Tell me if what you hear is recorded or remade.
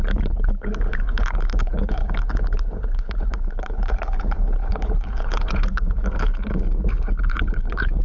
remade